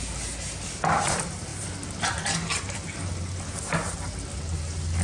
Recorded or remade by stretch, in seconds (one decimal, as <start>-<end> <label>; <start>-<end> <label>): 0.0-5.0 recorded